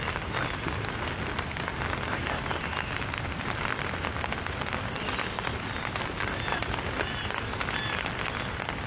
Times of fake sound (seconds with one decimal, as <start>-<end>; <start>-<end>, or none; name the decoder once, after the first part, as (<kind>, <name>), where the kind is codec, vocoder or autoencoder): none